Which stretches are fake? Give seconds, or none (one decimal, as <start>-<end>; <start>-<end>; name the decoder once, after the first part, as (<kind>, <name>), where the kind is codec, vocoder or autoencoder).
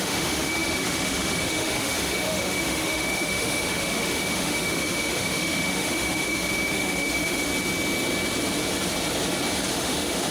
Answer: 0.0-7.5 (autoencoder, DAC-VAE); 9.7-10.3